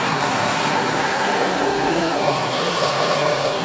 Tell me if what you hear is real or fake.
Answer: fake